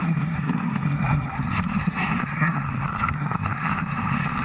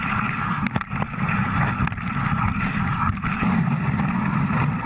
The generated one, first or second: first